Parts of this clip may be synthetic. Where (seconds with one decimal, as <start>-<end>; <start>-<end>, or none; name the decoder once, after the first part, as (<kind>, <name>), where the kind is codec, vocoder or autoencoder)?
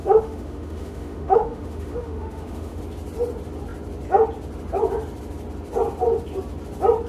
0.0-2.8 (autoencoder, DAC-VAE)